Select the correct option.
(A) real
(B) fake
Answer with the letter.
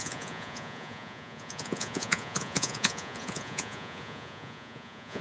B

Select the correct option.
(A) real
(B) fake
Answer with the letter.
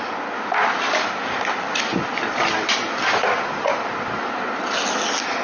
A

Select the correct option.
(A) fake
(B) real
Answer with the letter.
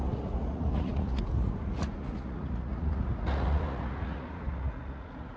A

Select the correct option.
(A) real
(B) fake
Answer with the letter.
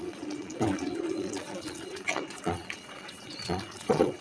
B